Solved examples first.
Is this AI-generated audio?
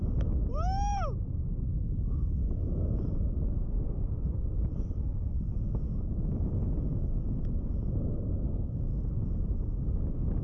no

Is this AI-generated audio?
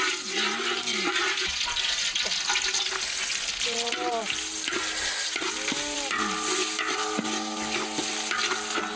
no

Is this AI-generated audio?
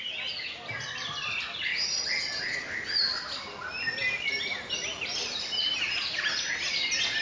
no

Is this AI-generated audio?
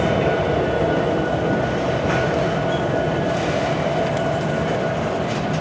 no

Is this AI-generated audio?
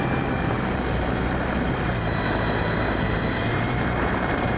yes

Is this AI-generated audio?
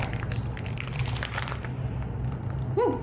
yes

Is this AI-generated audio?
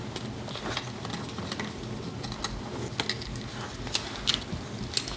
no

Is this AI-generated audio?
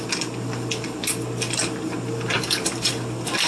no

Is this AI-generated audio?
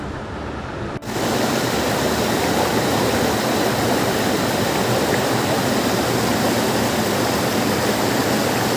no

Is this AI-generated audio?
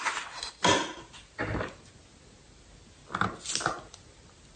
no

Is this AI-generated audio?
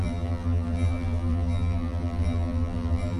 yes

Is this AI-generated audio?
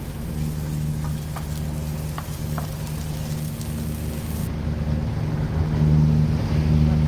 no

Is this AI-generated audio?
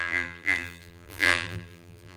yes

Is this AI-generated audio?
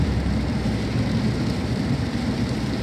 yes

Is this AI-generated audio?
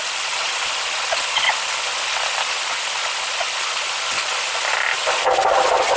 no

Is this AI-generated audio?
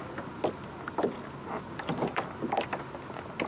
no